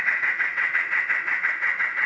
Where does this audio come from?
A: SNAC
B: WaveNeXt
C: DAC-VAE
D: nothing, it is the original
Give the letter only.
B